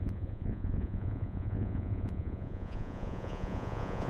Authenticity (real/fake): fake